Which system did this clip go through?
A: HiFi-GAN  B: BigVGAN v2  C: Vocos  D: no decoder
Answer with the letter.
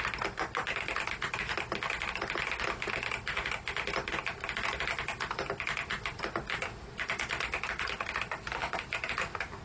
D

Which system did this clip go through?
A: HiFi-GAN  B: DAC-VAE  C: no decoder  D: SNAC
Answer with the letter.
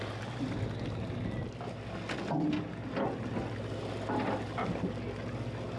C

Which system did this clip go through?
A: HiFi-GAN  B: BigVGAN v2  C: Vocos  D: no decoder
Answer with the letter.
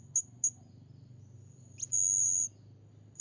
D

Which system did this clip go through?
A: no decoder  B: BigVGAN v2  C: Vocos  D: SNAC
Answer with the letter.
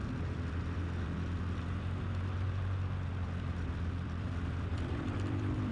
B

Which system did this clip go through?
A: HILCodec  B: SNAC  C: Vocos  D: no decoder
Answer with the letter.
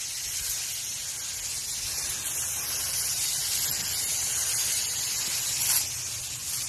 D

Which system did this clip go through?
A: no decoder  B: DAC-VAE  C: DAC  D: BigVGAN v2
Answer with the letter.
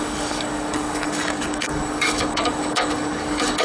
C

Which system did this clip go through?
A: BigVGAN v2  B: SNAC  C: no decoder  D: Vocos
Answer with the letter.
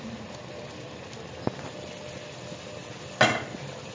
C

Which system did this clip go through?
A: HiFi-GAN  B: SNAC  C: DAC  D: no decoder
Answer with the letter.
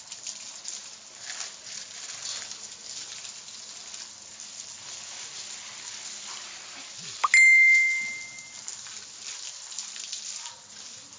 D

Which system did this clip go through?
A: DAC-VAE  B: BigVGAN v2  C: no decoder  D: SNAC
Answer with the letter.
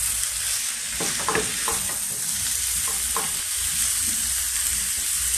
C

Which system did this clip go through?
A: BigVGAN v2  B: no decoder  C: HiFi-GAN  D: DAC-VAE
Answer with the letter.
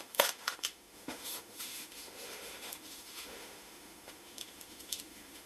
D